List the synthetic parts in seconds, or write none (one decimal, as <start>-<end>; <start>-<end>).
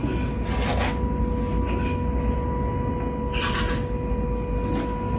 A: none